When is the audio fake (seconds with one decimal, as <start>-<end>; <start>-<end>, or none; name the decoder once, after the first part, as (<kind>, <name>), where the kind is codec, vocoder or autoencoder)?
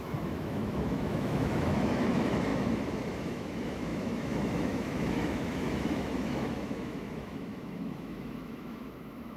0.0-9.4 (autoencoder, DAC-VAE)